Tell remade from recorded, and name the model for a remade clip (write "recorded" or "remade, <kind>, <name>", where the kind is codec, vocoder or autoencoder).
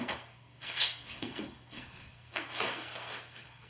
remade, codec, SNAC